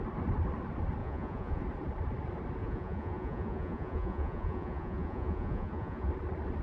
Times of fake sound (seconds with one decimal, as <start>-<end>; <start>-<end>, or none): 1.0-1.6; 2.6-6.1